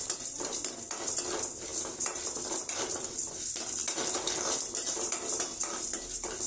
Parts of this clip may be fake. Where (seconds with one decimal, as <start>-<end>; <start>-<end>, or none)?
0.0-6.5